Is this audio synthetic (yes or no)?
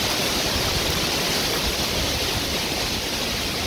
no